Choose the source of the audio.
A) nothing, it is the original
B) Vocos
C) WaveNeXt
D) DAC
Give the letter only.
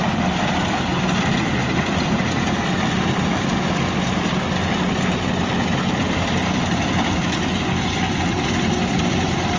A